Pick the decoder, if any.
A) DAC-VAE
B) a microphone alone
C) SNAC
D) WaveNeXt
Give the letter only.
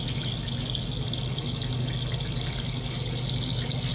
B